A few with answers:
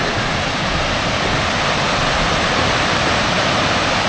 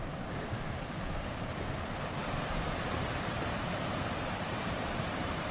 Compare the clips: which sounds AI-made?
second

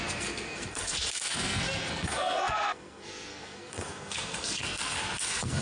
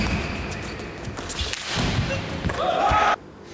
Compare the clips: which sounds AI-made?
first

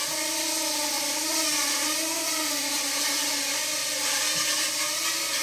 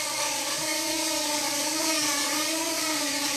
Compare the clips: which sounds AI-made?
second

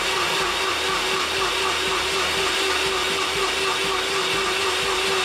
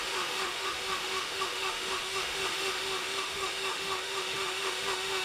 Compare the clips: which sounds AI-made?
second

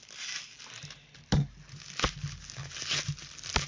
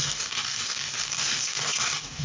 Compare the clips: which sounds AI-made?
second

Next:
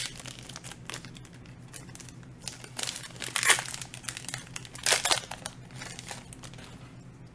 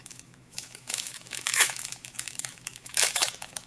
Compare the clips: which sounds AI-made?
second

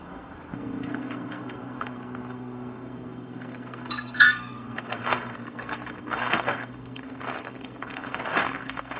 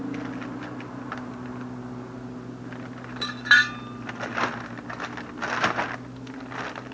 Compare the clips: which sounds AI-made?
first